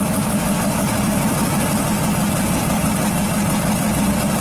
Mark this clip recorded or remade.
recorded